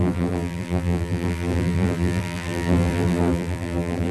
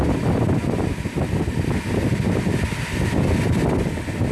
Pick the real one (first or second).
second